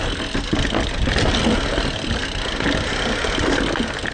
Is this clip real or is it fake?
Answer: real